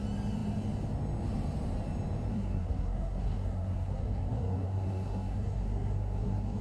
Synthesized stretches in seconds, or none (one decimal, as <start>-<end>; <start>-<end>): 2.3-6.6